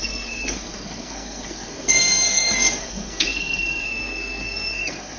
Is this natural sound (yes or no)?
no